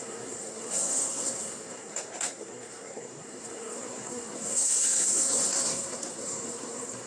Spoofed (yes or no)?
yes